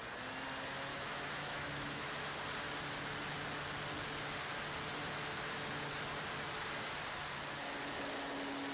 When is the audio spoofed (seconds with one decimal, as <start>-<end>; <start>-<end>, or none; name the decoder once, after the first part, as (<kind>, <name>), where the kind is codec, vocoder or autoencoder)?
0.9-2.1 (autoencoder, DAC-VAE)